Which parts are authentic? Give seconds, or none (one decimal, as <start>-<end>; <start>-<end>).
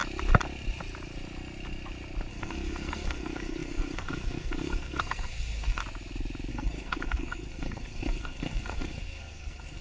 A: 0.0-2.3; 5.8-6.5